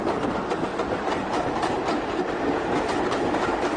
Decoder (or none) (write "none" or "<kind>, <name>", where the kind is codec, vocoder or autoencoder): none